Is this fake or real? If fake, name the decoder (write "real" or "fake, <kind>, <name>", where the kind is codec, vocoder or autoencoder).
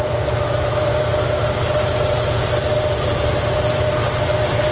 real